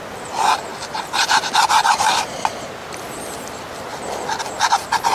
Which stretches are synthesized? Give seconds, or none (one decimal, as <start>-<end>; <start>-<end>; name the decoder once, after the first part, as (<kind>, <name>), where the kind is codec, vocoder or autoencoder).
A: 0.7-1.4 (vocoder, BigVGAN v2); 2.8-4.4

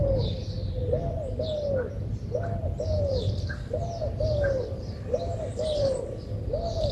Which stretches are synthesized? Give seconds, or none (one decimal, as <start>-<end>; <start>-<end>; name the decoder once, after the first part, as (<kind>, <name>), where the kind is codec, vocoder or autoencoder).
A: none

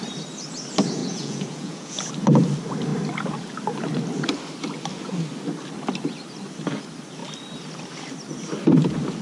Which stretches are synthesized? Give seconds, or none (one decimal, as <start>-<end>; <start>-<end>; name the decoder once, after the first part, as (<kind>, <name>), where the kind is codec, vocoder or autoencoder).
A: 1.0-2.1 (vocoder, Vocos)

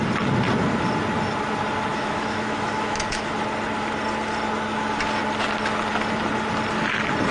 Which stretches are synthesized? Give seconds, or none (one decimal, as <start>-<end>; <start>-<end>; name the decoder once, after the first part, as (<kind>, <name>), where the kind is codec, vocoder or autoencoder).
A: 1.9-3.3 (autoencoder, DAC-VAE)